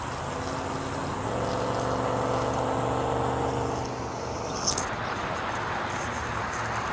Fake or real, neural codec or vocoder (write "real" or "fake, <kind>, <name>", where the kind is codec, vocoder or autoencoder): real